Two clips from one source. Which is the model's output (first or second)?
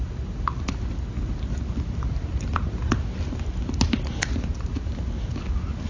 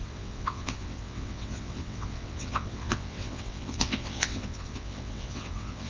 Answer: second